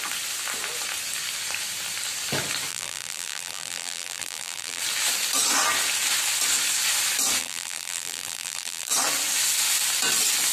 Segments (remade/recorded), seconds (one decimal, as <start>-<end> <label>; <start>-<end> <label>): 0.0-2.7 recorded; 2.7-4.8 remade; 4.8-7.4 recorded; 7.4-8.9 remade; 8.9-10.5 recorded